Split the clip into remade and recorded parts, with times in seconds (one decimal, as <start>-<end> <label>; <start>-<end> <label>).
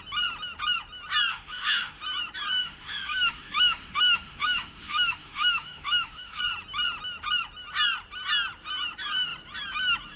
0.0-1.3 recorded; 1.3-2.0 remade; 2.0-2.6 recorded; 2.6-6.4 remade; 6.4-10.2 recorded